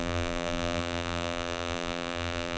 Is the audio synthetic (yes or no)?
yes